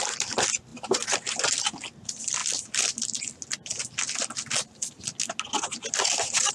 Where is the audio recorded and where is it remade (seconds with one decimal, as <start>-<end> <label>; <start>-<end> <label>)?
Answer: 0.0-2.4 remade; 2.4-6.5 recorded